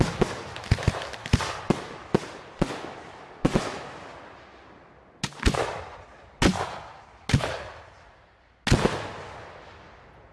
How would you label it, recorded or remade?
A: recorded